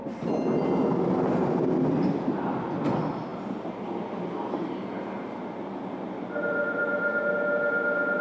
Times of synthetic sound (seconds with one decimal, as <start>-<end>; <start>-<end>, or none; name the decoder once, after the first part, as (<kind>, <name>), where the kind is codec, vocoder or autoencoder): none